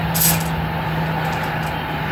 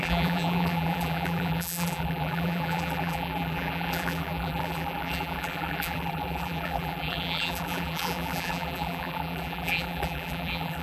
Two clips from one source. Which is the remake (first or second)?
second